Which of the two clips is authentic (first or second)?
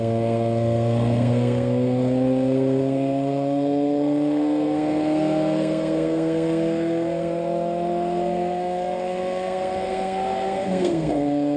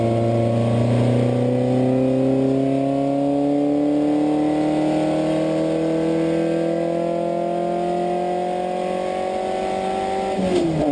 second